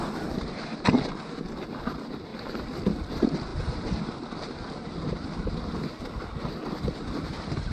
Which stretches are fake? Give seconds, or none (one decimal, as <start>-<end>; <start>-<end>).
2.3-2.8

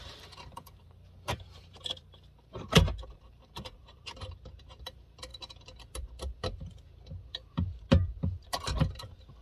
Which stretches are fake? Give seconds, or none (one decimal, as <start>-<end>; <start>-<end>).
0.0-5.3; 9.0-9.4